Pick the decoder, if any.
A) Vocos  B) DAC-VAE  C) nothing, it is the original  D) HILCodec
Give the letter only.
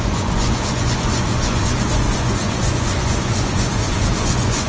A